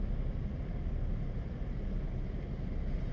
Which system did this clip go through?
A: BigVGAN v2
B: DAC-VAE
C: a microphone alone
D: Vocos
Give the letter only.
C